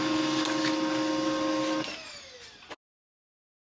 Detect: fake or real real